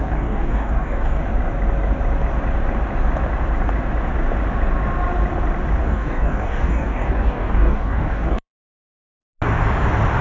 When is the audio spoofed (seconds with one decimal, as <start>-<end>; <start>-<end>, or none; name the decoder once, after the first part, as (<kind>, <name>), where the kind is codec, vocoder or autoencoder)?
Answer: 0.0-1.2 (codec, DAC); 5.8-9.1